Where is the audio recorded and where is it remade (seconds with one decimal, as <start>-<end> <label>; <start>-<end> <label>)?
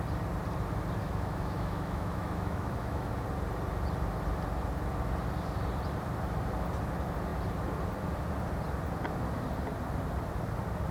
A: 0.0-1.0 recorded; 1.0-3.1 remade; 3.1-10.9 recorded